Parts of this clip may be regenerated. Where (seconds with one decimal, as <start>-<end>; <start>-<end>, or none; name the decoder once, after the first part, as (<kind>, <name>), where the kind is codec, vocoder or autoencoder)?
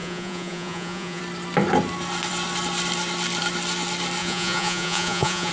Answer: 0.0-1.2 (vocoder, Vocos); 4.2-5.5